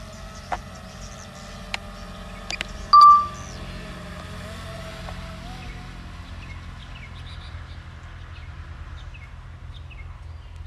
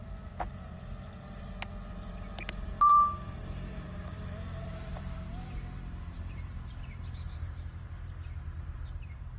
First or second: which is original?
first